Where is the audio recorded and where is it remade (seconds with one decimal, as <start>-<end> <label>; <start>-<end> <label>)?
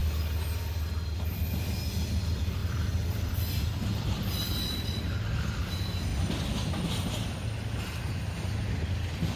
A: 0.0-2.6 recorded; 2.6-4.2 remade; 4.2-9.4 recorded